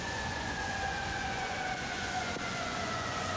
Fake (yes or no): yes